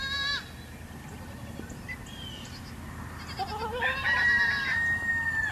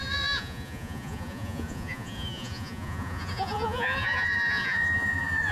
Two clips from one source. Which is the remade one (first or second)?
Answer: second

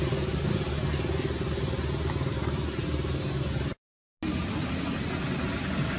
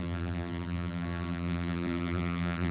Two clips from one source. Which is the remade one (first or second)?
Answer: second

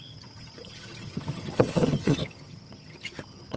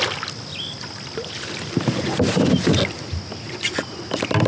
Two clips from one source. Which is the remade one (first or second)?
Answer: first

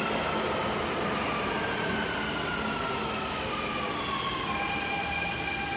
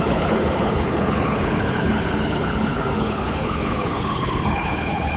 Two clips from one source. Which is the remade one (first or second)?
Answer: second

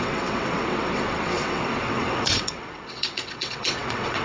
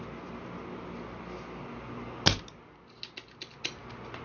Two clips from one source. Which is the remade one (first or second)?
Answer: first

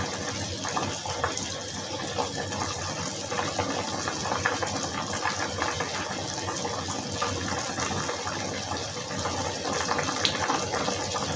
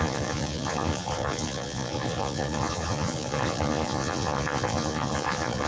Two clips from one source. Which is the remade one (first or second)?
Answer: second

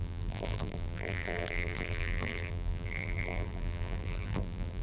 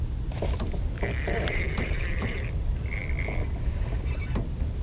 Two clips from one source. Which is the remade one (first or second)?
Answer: first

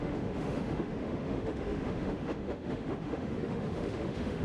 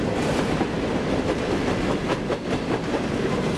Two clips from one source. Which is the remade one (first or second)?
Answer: first